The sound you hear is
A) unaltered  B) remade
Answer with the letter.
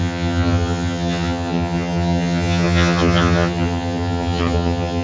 B